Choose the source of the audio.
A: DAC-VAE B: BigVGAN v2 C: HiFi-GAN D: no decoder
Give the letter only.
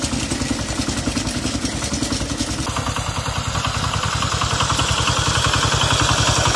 D